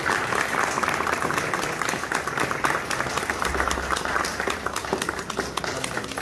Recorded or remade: recorded